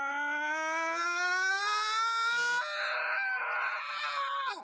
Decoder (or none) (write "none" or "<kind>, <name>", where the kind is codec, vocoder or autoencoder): none